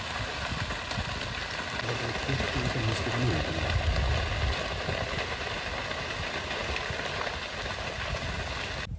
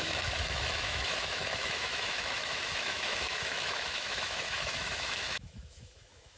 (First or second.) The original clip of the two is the first